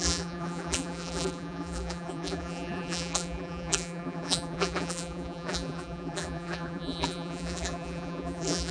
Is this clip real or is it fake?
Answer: fake